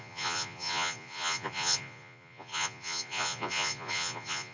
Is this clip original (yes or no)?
no